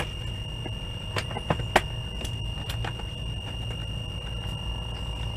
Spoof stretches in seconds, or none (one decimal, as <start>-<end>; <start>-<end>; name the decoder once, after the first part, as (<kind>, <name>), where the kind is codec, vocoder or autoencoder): none

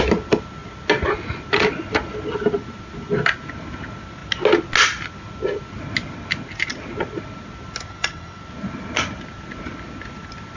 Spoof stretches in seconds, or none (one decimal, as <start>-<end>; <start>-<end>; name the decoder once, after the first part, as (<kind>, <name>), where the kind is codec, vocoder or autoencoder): 7.9-8.4 (vocoder, WaveNeXt)

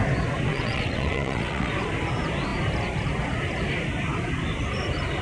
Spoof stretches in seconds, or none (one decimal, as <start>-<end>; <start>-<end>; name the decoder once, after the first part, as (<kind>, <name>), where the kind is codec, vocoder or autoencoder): 0.5-1.7 (vocoder, WaveNeXt)

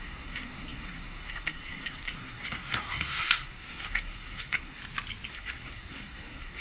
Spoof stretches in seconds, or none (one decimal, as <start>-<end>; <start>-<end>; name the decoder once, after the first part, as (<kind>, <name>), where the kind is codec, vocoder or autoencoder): 0.0-4.8 (codec, SNAC); 5.3-6.6

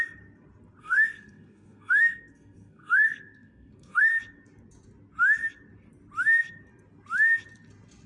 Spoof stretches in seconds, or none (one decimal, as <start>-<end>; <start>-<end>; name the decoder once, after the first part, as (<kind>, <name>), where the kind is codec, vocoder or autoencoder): 0.8-4.1 (codec, SNAC)

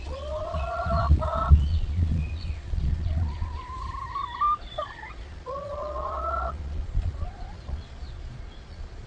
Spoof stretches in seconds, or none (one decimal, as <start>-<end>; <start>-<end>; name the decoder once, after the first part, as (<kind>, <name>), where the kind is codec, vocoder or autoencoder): 0.0-3.6 (vocoder, Vocos); 4.6-9.1